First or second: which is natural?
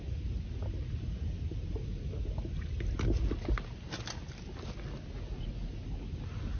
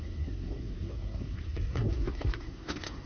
first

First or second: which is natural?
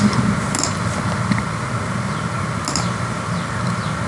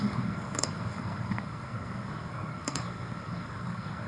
first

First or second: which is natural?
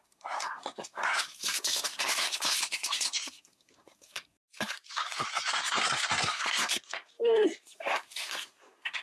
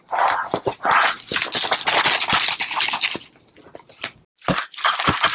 second